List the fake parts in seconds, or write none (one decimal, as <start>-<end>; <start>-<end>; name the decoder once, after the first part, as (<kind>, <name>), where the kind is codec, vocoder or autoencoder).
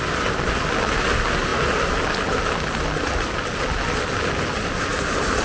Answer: none